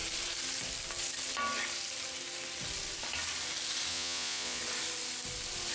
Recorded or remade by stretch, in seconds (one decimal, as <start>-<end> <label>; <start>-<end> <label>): 0.0-3.9 recorded; 3.9-4.6 remade; 4.6-5.7 recorded